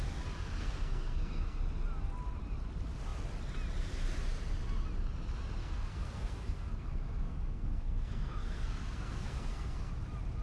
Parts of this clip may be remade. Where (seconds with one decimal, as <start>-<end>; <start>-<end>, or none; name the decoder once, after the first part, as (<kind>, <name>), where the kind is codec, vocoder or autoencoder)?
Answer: 0.6-1.6 (codec, SNAC); 5.6-9.9

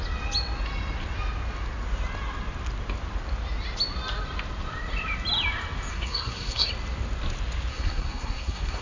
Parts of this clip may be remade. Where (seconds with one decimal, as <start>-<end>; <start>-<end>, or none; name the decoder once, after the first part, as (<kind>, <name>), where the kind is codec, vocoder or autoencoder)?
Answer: 5.9-6.7 (codec, SNAC); 7.7-8.8

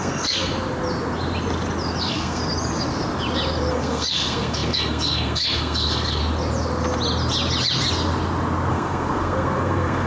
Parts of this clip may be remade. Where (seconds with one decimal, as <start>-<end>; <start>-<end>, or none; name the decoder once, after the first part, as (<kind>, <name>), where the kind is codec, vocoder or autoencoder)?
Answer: 0.0-0.5 (codec, SNAC); 2.0-2.4; 3.7-6.2; 8.7-10.1

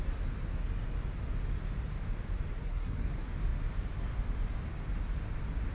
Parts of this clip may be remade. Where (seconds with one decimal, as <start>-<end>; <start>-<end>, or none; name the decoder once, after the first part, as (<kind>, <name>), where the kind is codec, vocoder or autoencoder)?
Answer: 2.5-3.1 (codec, SNAC)

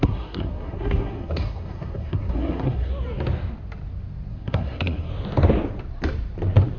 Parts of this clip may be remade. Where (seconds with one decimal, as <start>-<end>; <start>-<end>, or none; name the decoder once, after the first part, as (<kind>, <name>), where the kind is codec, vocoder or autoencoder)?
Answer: 0.0-2.9 (codec, SNAC); 4.3-5.1